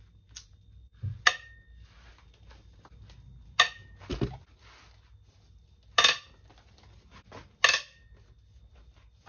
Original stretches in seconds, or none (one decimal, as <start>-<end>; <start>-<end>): 0.0-9.3